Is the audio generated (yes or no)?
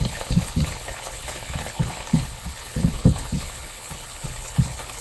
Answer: yes